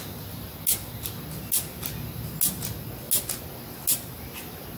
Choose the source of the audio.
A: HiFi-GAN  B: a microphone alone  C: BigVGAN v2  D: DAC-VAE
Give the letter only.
B